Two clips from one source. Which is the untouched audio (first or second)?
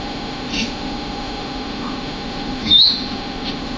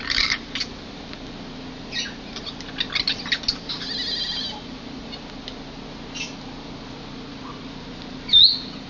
second